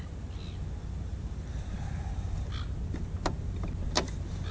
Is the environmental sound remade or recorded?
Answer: recorded